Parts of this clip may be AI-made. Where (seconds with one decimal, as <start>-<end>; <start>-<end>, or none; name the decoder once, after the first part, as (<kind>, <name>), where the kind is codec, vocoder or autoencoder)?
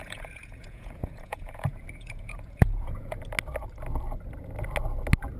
0.0-3.2 (vocoder, Vocos)